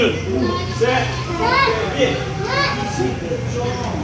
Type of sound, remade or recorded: recorded